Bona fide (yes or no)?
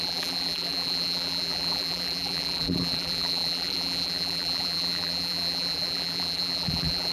no